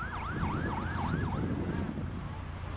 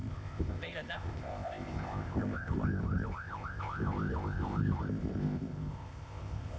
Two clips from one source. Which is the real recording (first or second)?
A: first